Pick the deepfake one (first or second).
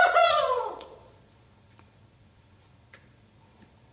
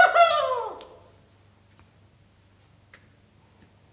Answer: first